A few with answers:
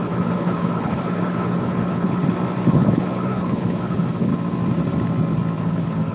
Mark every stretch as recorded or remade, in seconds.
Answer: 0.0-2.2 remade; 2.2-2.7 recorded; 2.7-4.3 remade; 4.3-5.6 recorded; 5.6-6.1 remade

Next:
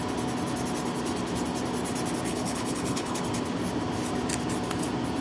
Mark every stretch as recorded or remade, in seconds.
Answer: 0.0-2.3 recorded; 2.3-3.2 remade; 3.2-5.2 recorded

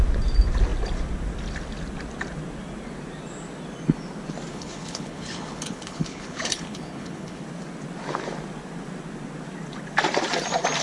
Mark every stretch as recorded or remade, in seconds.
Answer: 0.0-4.5 recorded; 4.5-7.4 remade; 7.4-10.8 recorded

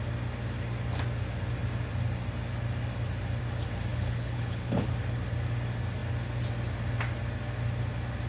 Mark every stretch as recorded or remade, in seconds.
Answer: 0.0-3.9 recorded; 3.9-4.9 remade; 4.9-8.3 recorded

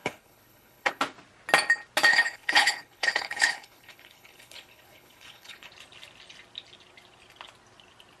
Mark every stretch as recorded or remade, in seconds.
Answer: 0.0-1.0 remade; 1.0-2.1 recorded; 2.1-5.7 remade; 5.7-8.2 recorded